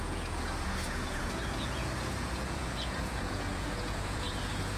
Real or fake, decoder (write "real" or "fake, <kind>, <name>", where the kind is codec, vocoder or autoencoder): fake, vocoder, Vocos